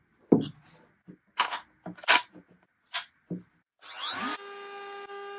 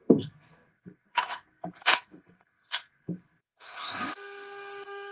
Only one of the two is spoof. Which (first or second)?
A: second